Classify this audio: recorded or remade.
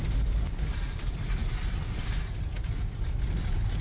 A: recorded